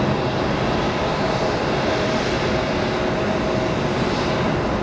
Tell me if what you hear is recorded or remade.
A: recorded